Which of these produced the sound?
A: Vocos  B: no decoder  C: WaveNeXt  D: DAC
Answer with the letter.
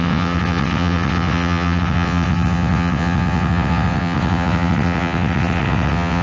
C